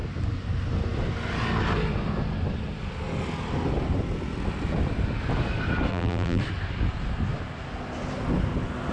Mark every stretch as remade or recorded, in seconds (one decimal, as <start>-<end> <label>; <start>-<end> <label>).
0.0-5.9 recorded; 5.9-6.4 remade; 6.4-8.9 recorded